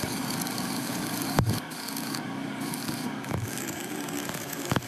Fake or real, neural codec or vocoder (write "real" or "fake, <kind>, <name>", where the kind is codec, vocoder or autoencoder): fake, codec, DAC